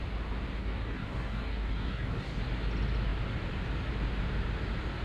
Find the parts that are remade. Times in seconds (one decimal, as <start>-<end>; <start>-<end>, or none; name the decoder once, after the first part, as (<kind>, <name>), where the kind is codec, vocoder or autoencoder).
0.6-2.4 (codec, DAC)